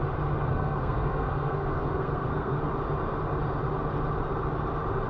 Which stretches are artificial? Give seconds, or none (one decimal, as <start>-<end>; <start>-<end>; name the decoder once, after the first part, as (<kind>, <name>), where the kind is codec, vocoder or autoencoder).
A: 0.5-2.6 (codec, SNAC)

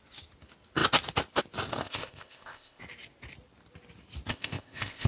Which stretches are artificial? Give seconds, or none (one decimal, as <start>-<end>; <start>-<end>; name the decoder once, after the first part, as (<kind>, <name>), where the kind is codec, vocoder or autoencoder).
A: 1.8-2.8 (codec, ZipCodec); 4.3-5.1

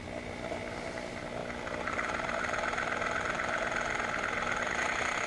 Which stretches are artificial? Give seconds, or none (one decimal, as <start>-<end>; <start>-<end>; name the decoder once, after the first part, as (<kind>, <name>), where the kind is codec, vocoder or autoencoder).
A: none

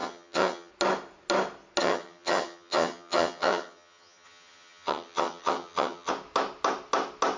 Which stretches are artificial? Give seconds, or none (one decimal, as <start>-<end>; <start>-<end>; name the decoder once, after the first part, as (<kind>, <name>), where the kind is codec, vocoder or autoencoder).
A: 0.0-0.7 (vocoder, HiFi-GAN); 1.8-6.1

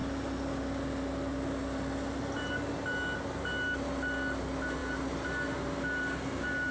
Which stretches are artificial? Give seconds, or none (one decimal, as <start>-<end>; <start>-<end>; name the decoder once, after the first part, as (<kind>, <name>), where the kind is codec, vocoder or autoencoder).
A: none